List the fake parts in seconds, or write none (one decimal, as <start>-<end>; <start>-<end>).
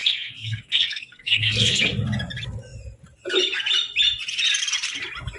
0.0-1.8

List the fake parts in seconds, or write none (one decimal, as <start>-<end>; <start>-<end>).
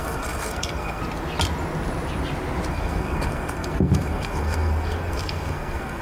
0.0-1.0; 2.7-6.0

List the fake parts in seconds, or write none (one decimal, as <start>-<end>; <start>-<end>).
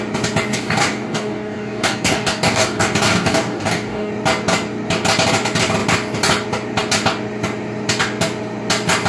0.5-4.1